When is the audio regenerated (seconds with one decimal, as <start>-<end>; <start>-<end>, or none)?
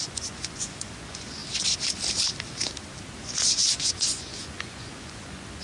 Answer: 0.0-1.4; 3.2-5.6